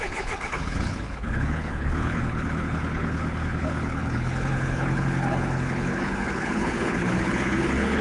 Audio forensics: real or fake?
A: fake